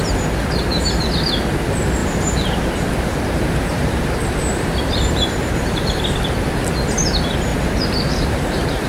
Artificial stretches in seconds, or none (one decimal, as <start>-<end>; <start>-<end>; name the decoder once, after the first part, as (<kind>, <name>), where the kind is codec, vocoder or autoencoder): 2.0-6.0 (vocoder, BigVGAN v2); 7.5-8.9